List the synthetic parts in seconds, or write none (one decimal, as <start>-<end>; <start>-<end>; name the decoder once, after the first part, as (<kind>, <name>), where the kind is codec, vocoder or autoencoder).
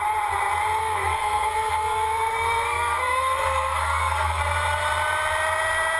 0.8-4.4 (codec, SNAC)